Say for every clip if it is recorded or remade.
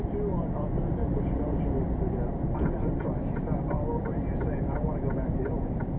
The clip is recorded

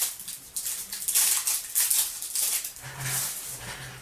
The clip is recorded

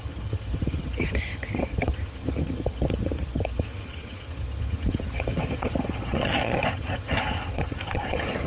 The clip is remade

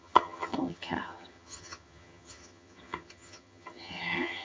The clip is remade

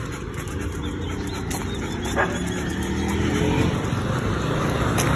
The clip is recorded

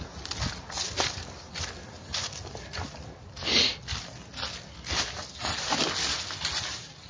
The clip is recorded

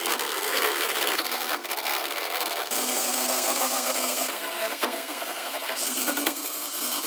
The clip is remade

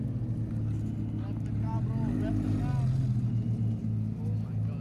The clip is recorded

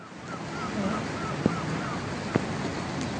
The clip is recorded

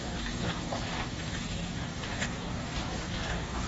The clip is remade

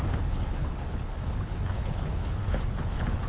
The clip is remade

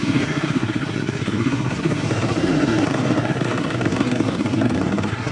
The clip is remade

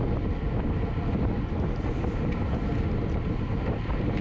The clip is recorded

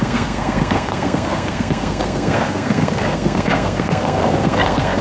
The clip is remade